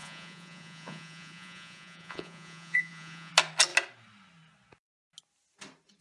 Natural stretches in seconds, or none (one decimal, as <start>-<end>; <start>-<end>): 3.3-6.0